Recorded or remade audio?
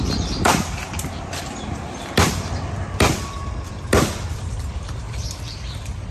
remade